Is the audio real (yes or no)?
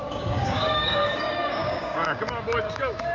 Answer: no